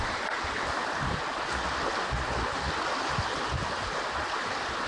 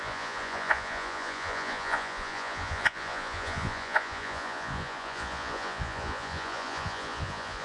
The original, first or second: first